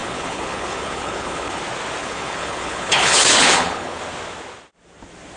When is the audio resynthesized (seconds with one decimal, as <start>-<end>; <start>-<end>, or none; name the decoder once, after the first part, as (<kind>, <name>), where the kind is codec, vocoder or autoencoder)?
0.0-1.6 (codec, HILCodec); 2.0-4.0